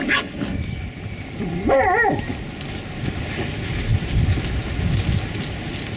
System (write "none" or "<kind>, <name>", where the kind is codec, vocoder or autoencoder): none